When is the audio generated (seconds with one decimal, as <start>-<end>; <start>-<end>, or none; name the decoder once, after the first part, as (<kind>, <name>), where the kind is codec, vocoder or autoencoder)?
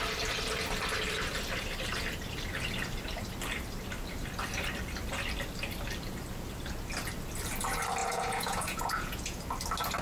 8.0-9.4 (vocoder, Vocos)